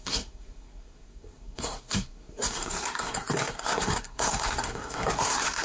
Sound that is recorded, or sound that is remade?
remade